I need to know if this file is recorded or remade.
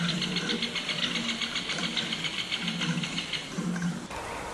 recorded